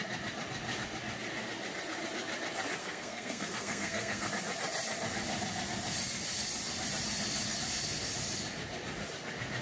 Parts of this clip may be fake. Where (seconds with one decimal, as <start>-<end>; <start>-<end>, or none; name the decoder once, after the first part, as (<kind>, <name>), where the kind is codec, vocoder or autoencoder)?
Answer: 2.8-4.3 (codec, SNAC)